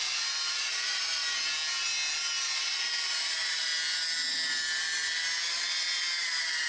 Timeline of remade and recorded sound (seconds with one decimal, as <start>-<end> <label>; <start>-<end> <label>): 0.0-1.2 remade; 1.2-2.4 recorded; 2.4-3.7 remade; 3.7-6.2 recorded; 6.2-6.7 remade